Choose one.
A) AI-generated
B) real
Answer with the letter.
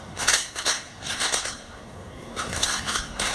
A